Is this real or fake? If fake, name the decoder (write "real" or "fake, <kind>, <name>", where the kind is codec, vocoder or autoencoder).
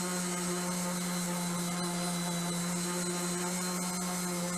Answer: real